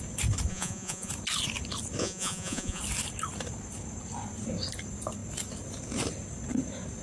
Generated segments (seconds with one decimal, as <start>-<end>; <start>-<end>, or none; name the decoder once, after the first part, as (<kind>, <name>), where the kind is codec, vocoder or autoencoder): 0.5-1.1 (vocoder, Vocos); 2.0-2.8